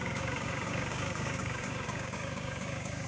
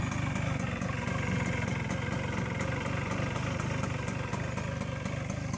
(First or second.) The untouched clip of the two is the second